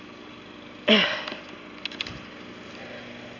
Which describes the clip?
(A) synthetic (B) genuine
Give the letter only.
B